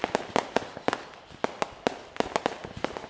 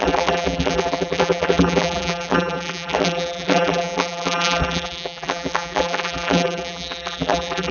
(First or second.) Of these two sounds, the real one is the first